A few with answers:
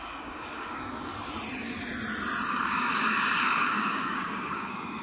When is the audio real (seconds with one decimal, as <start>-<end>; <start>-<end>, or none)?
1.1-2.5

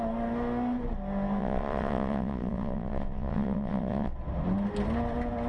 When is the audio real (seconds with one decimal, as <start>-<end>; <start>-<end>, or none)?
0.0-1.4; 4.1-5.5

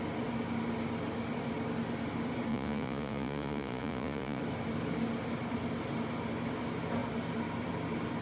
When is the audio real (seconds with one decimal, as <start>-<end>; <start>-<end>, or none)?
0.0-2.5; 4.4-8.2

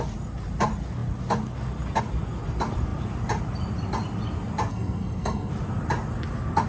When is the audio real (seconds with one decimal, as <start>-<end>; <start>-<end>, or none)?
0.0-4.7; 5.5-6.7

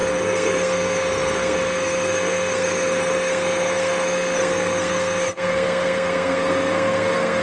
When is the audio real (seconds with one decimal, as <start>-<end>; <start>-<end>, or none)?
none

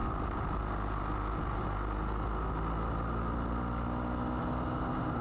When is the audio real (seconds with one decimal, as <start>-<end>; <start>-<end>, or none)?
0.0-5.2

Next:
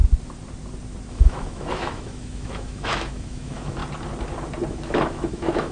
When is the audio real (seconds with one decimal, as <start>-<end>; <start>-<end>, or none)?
0.0-1.1; 3.8-4.7

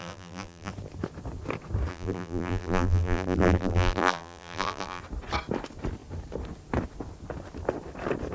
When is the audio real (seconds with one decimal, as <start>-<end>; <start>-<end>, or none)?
0.7-1.9; 5.0-8.3